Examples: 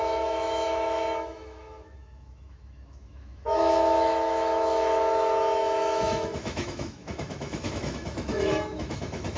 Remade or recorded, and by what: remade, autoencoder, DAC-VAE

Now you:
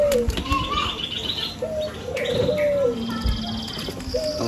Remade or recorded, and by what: recorded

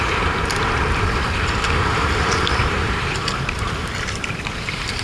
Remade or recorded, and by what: remade, vocoder, BigVGAN v2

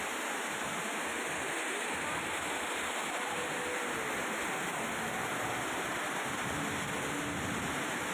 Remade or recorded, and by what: recorded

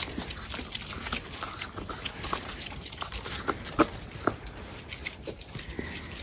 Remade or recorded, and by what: recorded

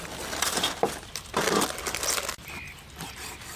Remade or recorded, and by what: recorded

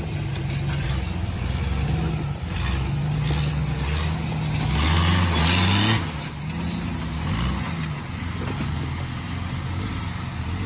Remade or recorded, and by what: recorded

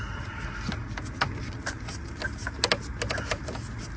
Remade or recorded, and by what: recorded